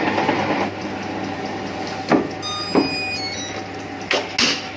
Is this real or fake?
real